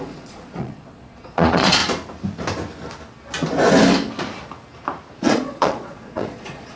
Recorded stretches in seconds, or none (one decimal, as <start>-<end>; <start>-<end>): 1.8-5.1